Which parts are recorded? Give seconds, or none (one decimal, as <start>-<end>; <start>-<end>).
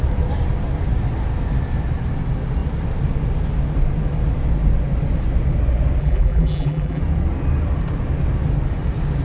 0.0-6.0; 7.0-9.2